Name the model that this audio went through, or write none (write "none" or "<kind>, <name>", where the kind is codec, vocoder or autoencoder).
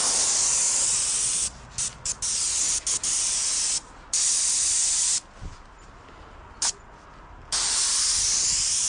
none